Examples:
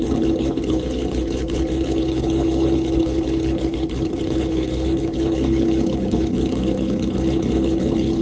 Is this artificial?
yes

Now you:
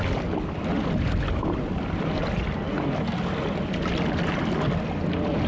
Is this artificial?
no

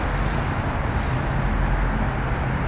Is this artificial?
no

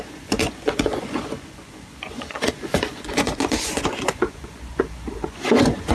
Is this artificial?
yes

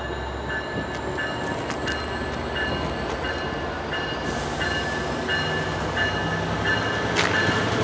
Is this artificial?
no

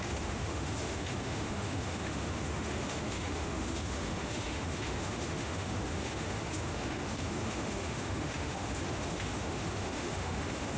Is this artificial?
yes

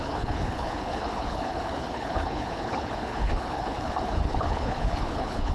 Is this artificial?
yes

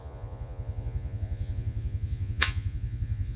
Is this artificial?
yes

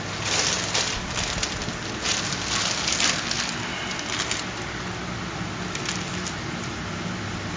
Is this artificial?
no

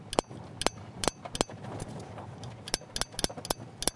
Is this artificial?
no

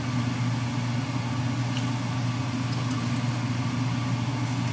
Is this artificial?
no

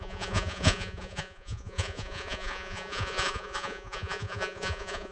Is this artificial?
yes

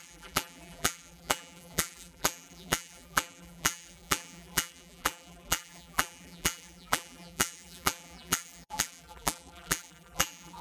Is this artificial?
yes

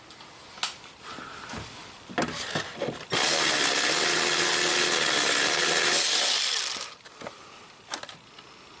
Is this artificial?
no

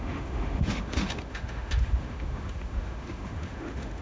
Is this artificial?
yes